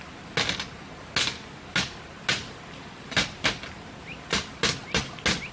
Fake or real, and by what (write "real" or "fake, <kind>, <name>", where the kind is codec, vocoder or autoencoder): real